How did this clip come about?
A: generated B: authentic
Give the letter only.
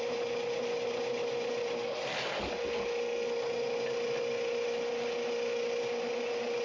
B